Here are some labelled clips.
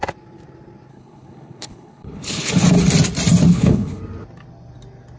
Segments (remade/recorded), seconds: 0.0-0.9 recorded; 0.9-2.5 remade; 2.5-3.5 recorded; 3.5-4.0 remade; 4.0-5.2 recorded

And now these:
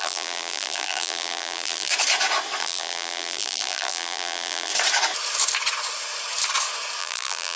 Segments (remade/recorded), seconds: 0.0-1.9 remade; 1.9-2.6 recorded; 2.6-4.7 remade; 4.7-7.0 recorded; 7.0-7.6 remade

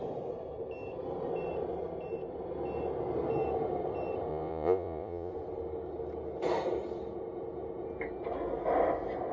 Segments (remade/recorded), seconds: 0.0-4.3 recorded; 4.3-5.3 remade; 5.3-9.3 recorded

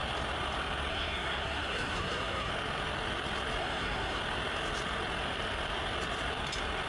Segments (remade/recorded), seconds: 0.0-0.9 recorded; 0.9-2.5 remade; 2.5-3.6 recorded; 3.6-4.2 remade; 4.2-6.9 recorded